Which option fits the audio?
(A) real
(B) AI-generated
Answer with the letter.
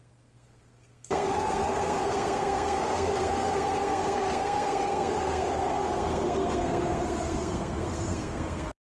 B